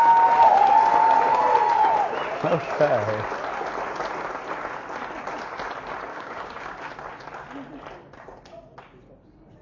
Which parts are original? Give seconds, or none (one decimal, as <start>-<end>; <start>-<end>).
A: 0.0-6.1; 6.8-9.6